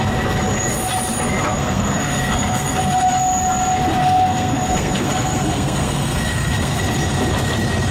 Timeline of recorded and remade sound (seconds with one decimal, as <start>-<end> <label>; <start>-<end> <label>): 0.0-1.5 recorded; 1.5-2.8 remade; 2.8-4.0 recorded; 4.0-6.8 remade; 6.8-7.9 recorded